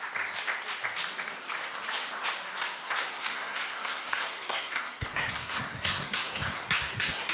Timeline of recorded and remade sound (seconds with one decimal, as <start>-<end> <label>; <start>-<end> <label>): 0.0-2.8 recorded; 2.8-7.3 remade